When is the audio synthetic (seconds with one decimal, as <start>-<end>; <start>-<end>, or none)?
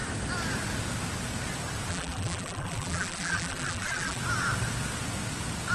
1.9-4.2